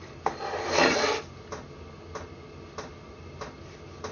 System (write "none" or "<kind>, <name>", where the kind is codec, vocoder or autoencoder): none